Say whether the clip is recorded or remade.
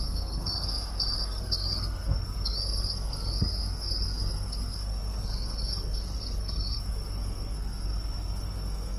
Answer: remade